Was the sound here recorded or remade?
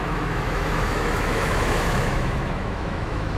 remade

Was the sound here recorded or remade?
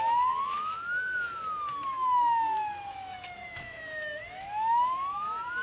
remade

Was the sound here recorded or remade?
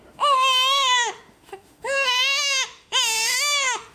remade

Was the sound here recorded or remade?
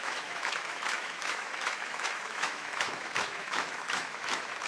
remade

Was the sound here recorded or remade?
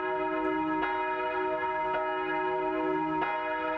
recorded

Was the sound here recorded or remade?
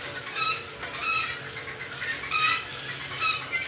recorded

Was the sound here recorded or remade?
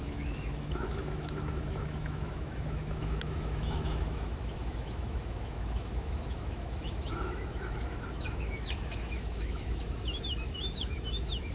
remade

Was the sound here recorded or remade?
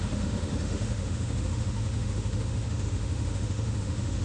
remade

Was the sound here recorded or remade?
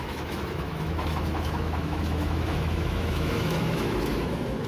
remade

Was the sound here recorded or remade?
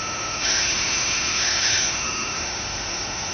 remade